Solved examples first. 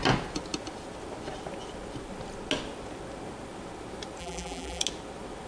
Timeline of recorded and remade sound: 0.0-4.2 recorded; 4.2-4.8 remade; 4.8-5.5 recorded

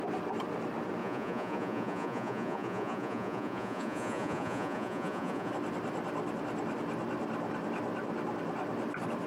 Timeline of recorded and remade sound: 0.0-1.0 recorded; 1.0-5.5 remade; 5.5-9.3 recorded

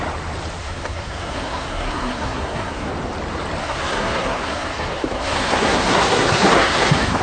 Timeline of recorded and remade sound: 0.0-0.6 recorded; 0.6-2.9 remade; 2.9-3.6 recorded; 3.6-7.2 remade